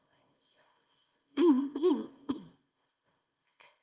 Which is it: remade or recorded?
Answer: remade